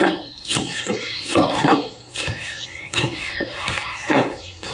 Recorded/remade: remade